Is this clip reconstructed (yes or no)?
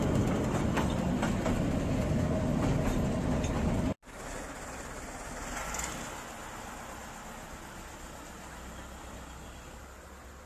no